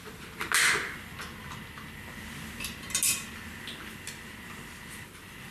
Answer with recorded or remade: recorded